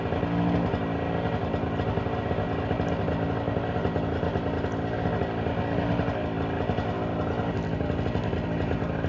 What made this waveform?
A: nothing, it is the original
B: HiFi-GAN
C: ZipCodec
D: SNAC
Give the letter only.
A